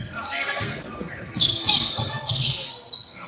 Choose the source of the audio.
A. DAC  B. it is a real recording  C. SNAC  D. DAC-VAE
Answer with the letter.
C